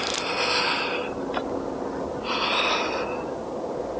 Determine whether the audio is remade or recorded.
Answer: recorded